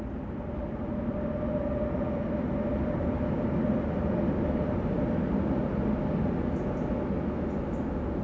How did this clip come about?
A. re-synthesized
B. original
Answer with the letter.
B